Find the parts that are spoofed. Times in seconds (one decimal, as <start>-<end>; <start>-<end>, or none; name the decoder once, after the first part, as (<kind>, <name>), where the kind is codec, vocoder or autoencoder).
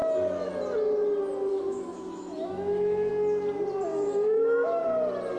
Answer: 0.0-0.5 (autoencoder, DAC-VAE); 1.5-3.1; 3.9-4.8